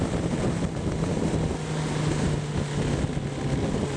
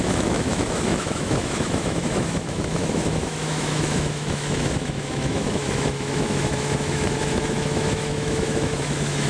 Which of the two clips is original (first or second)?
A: first